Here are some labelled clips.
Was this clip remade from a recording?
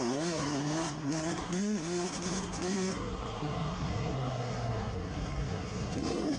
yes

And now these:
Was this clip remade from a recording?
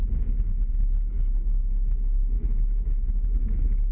yes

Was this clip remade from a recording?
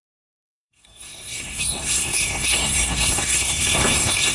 yes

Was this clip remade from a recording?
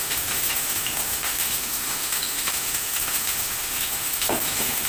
yes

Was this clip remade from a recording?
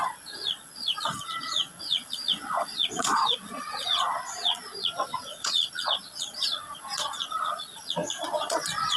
yes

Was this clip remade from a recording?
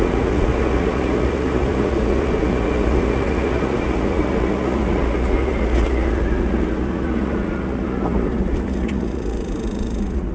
yes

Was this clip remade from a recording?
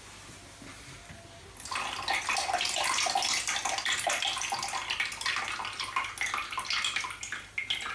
no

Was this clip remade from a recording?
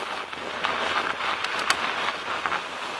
no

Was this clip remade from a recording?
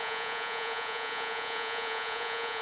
yes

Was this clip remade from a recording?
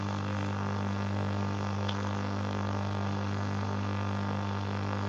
yes